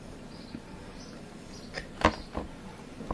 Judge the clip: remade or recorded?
recorded